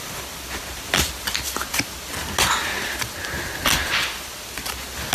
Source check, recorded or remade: recorded